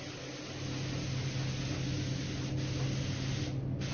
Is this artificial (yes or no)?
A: no